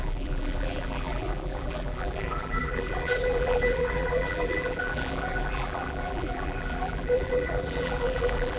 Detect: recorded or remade remade